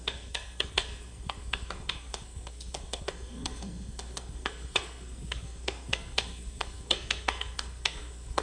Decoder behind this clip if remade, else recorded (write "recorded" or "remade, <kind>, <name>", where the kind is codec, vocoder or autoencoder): remade, codec, SNAC